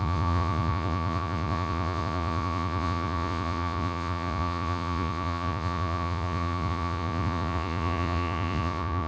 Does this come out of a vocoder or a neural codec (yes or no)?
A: yes